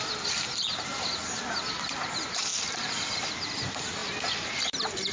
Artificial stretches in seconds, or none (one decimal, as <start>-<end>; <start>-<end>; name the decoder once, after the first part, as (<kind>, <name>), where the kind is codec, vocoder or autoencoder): 0.0-5.1 (vocoder, BigVGAN v2)